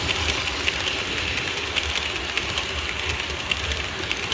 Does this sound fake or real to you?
real